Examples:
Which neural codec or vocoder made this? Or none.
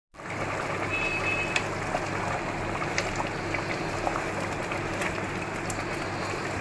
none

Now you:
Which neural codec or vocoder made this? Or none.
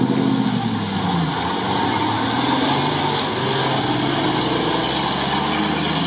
none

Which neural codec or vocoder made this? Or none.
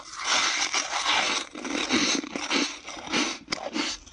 none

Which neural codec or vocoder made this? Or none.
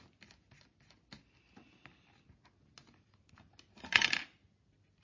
none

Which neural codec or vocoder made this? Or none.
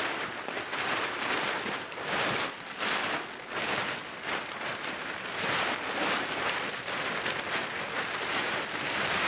none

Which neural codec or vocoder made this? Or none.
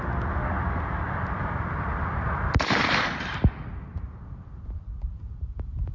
none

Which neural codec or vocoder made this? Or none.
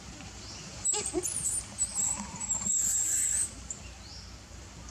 vocoder, BigVGAN v2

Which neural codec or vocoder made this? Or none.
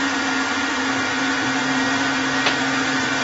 none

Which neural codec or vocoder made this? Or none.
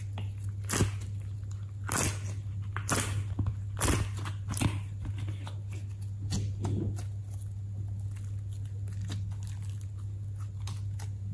none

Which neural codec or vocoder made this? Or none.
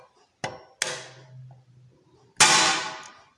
none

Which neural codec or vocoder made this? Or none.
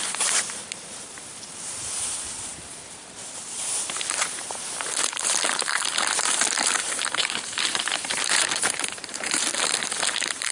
vocoder, BigVGAN v2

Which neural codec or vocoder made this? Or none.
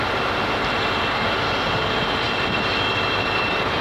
none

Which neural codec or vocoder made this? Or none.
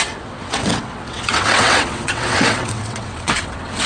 vocoder, WaveNeXt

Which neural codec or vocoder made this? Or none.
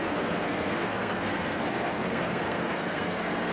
codec, SNAC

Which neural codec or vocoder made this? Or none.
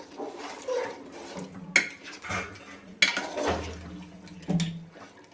none